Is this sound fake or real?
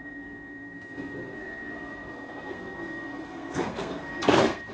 fake